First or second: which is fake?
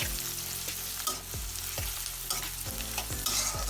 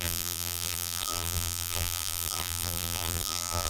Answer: second